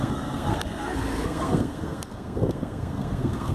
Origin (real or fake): fake